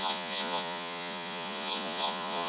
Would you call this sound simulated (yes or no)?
yes